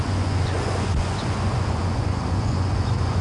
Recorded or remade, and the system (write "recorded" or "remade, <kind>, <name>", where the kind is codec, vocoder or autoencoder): remade, vocoder, Vocos